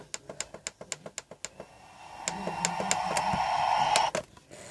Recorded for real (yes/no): yes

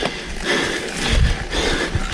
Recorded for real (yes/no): yes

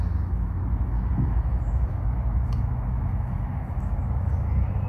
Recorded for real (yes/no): no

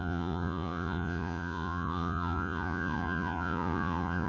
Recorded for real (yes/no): no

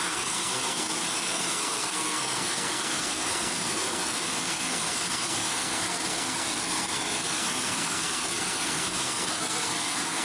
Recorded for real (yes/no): no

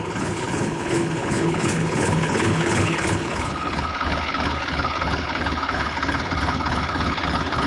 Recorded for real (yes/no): no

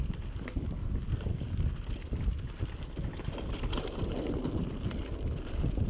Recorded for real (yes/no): yes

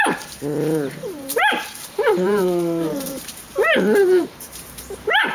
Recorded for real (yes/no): no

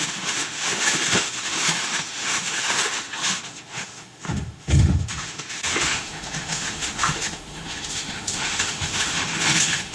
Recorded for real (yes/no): no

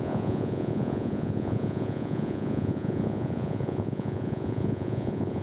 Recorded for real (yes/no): no